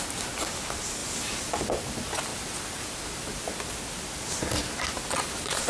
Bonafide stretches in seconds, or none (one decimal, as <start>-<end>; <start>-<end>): 0.0-5.7